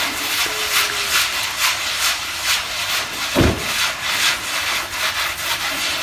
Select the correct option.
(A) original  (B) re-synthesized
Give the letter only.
A